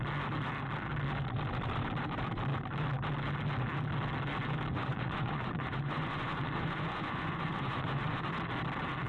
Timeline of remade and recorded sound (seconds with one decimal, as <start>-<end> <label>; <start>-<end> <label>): 0.0-4.7 recorded; 4.7-8.3 remade; 8.3-9.1 recorded